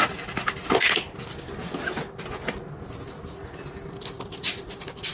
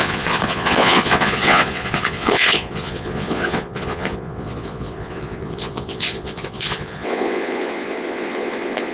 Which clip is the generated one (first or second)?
second